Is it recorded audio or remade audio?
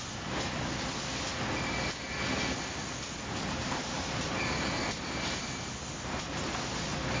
recorded